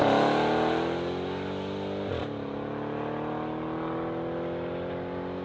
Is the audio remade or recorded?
recorded